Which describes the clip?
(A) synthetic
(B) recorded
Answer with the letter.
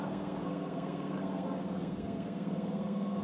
A